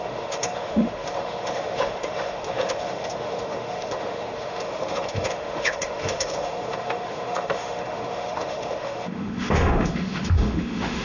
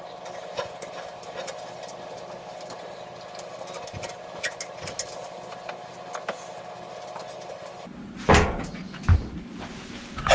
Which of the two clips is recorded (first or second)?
second